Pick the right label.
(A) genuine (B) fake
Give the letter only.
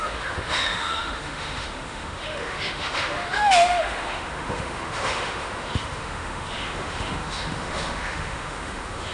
B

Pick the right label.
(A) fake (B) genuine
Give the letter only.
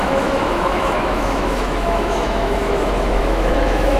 A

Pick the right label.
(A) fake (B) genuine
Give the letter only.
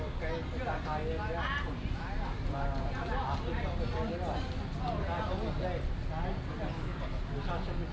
B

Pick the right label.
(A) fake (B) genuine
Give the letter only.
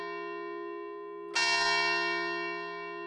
B